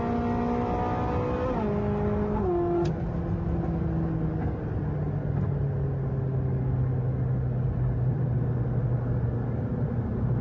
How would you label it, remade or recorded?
recorded